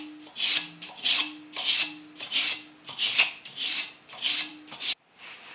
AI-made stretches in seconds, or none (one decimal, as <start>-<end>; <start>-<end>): none